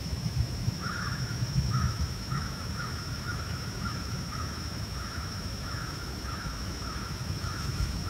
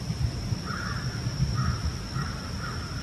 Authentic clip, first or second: second